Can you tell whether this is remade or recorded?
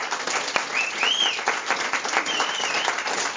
remade